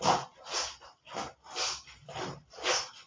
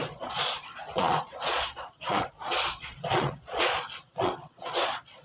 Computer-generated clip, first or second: second